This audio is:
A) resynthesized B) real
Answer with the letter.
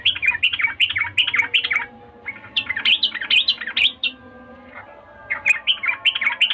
B